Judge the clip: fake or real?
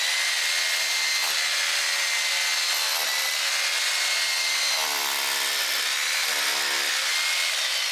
real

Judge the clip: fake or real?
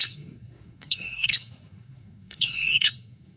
fake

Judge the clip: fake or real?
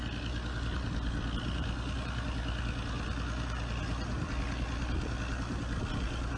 real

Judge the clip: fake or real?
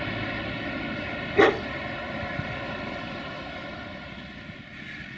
real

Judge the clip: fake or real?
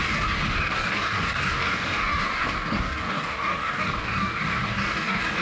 fake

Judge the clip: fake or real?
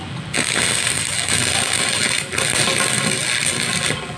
real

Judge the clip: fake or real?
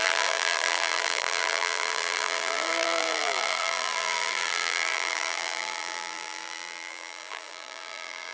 fake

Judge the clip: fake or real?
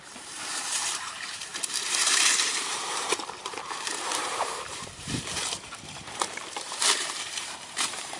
fake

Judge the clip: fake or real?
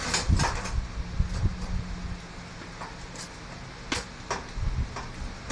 real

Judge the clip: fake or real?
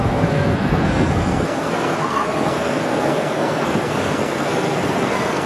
fake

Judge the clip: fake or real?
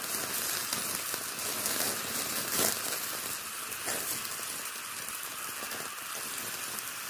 real